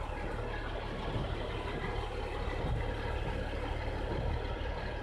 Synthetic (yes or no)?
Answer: no